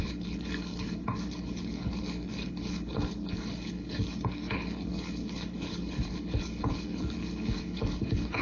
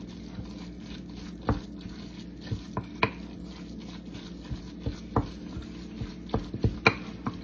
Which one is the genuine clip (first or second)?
second